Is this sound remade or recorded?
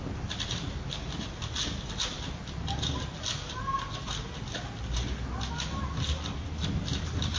recorded